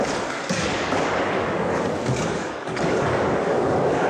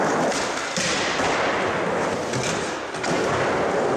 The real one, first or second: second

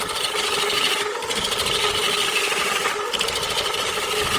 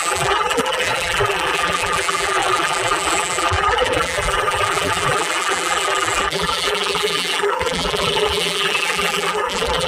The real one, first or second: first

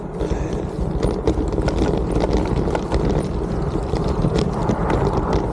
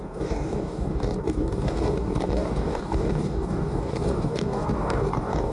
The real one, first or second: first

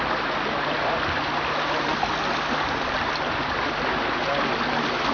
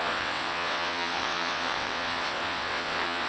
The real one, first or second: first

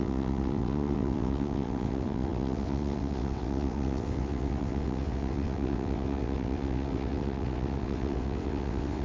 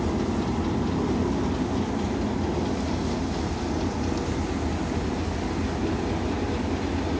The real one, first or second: second